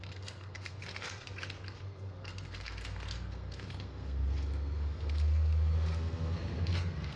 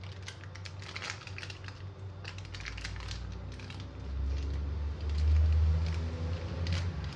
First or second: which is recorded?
second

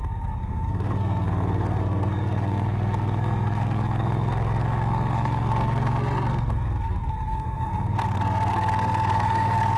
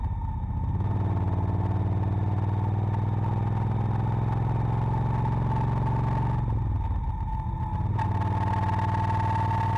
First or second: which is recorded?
second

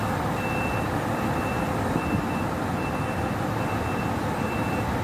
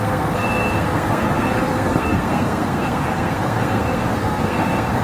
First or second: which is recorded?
first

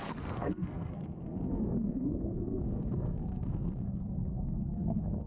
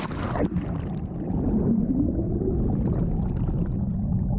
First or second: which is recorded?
second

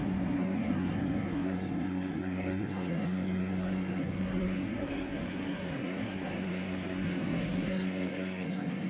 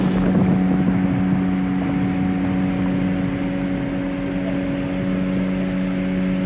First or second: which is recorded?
second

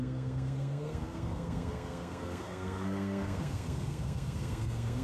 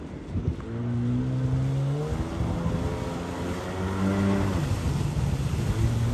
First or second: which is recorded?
second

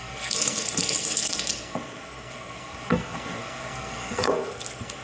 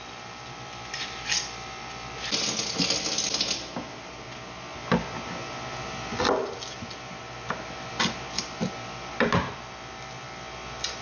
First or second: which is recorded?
second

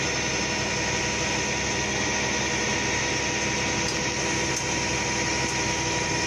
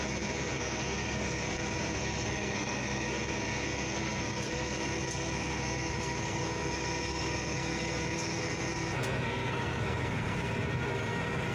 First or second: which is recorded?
first